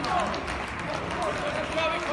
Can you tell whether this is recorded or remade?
recorded